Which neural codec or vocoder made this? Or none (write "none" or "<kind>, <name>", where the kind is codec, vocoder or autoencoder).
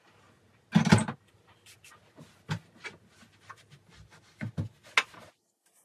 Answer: none